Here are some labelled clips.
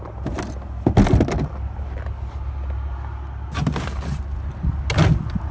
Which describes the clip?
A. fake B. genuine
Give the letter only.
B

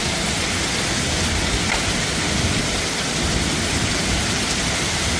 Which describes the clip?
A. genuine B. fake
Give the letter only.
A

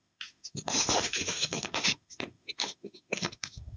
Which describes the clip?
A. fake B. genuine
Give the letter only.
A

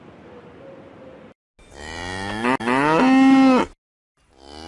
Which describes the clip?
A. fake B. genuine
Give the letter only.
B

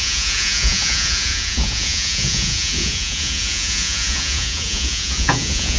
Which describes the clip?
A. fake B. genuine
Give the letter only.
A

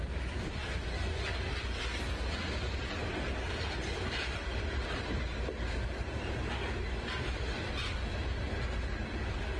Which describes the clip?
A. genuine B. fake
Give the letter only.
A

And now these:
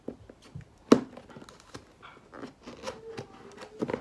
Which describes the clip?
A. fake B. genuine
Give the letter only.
B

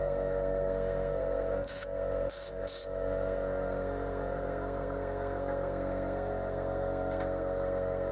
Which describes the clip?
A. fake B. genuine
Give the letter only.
A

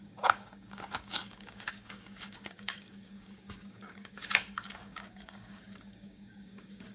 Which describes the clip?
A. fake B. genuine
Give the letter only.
A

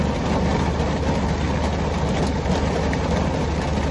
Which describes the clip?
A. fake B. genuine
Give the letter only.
B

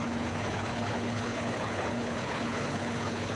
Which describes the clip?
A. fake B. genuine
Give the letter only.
A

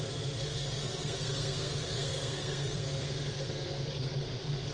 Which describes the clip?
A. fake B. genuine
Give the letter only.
A